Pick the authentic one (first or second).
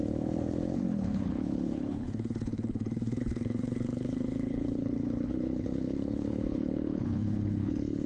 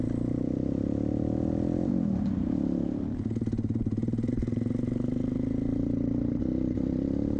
second